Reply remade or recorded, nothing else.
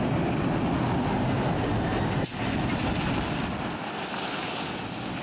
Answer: recorded